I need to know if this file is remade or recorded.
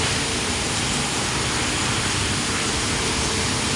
recorded